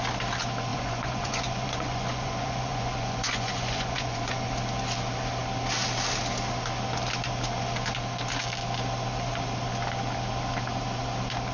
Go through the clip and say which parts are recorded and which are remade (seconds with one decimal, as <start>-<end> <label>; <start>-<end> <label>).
0.0-0.7 recorded; 0.7-4.5 remade; 4.5-11.5 recorded